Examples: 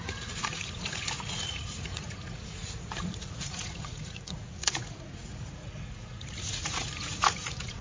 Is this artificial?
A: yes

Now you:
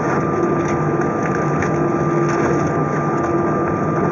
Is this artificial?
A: no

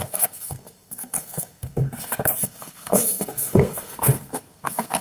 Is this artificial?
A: yes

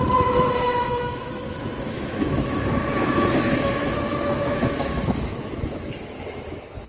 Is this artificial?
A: yes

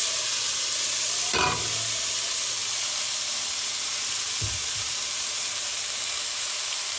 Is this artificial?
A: no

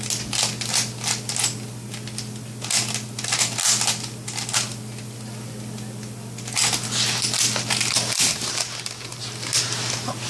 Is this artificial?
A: no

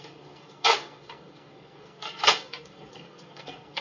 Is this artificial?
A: yes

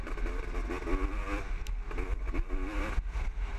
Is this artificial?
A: no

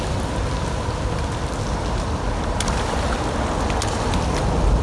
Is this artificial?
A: no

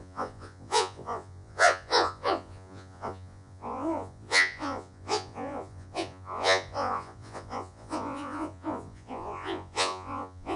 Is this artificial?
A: yes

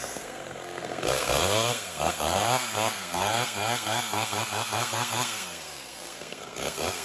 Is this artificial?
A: yes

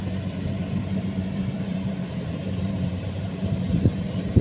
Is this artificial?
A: yes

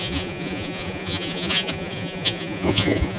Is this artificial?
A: yes